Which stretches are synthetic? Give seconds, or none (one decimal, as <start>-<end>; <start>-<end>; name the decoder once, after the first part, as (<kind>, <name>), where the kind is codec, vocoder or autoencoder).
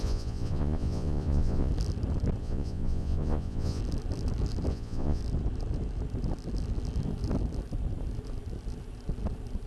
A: 0.0-1.7 (vocoder, Vocos); 2.4-3.8; 4.7-5.2